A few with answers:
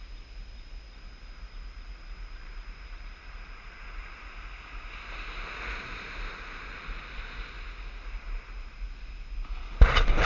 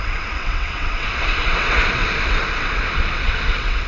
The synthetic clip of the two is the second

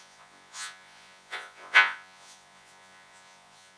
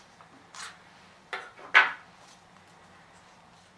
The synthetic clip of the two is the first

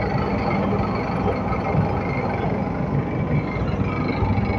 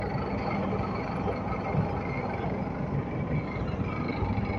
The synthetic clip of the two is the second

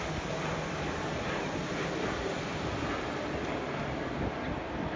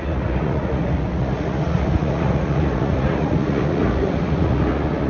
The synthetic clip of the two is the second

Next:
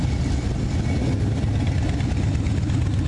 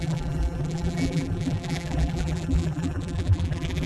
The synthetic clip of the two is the second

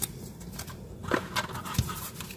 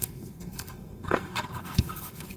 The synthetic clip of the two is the second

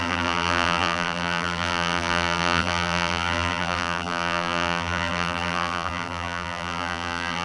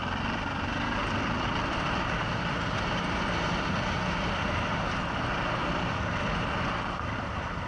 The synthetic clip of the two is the first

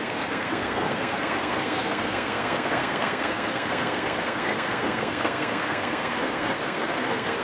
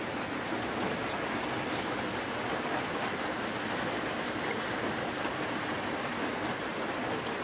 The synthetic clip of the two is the first